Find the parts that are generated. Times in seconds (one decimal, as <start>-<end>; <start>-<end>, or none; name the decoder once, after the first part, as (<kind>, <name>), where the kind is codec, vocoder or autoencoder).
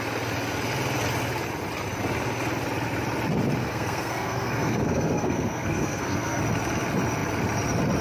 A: 3.6-6.4 (codec, SNAC)